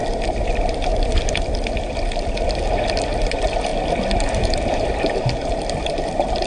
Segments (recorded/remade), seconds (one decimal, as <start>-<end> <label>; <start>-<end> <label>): 0.0-0.9 remade; 0.9-3.3 recorded; 3.3-3.7 remade; 3.7-4.4 recorded; 4.4-6.5 remade